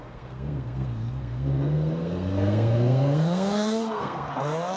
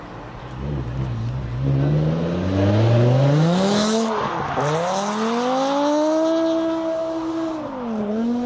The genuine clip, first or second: second